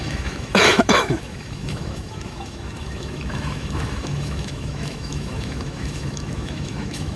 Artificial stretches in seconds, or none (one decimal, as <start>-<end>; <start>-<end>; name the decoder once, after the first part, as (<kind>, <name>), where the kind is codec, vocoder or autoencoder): 0.0-7.2 (autoencoder, DAC-VAE)